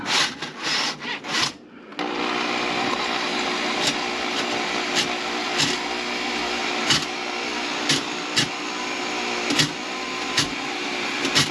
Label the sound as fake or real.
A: real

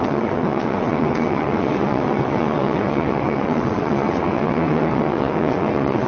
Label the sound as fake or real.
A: fake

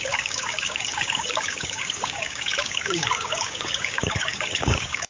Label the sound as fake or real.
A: fake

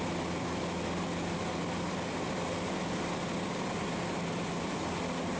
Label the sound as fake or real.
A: real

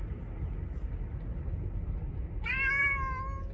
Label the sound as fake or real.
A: real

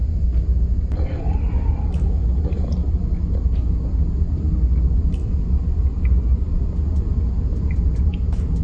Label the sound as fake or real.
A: real